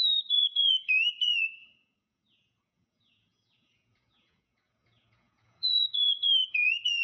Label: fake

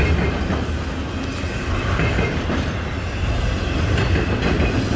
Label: real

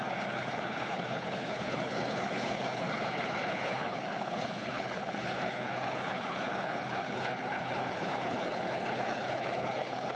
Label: fake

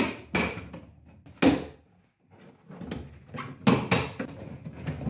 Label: real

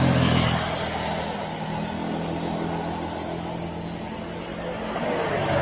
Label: real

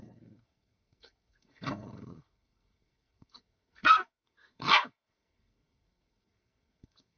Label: fake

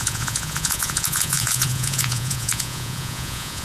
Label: fake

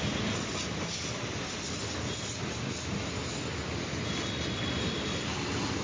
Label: real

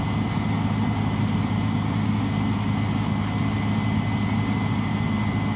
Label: real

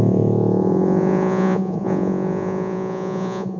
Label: fake